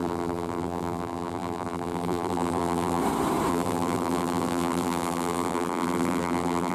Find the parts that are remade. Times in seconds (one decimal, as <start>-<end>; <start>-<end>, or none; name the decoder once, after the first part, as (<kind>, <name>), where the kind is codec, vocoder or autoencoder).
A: 0.0-3.0 (vocoder, BigVGAN v2); 3.5-6.7